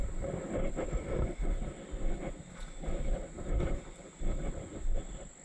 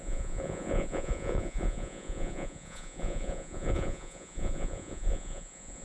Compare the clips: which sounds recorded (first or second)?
first